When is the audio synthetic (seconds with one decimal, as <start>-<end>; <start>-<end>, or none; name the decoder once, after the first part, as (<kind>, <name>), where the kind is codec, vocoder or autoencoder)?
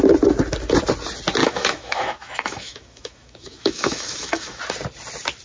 1.4-4.6 (autoencoder, DAC-VAE)